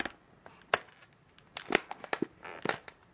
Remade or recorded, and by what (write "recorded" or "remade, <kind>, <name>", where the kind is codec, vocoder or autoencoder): recorded